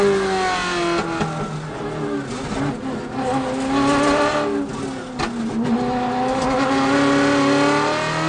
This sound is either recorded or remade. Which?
recorded